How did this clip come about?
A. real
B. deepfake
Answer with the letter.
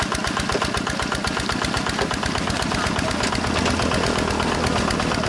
A